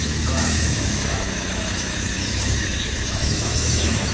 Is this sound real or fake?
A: fake